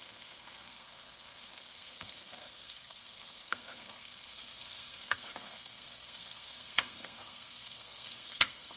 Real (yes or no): no